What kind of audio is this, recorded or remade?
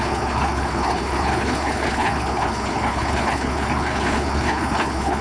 remade